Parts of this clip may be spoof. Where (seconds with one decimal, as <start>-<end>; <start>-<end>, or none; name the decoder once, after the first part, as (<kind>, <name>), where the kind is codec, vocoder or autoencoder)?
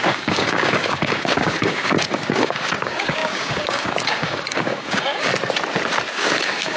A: 0.0-5.3 (codec, DAC); 6.1-6.8